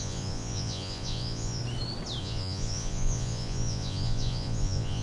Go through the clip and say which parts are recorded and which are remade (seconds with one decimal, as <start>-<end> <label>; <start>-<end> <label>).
0.0-1.6 remade; 1.6-2.2 recorded; 2.2-5.0 remade